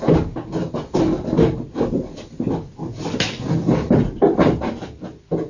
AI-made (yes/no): no